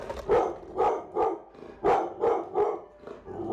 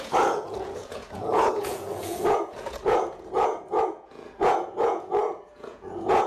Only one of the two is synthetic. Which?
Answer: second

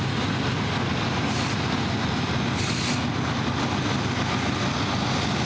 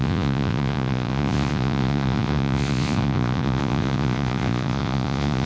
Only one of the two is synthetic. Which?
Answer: second